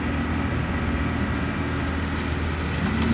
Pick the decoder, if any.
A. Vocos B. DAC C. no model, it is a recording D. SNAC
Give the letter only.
C